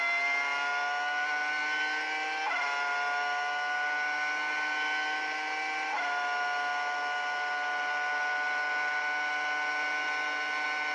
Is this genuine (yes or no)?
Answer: yes